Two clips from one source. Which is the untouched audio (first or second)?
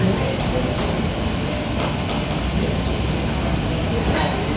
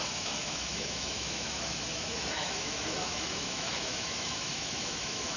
first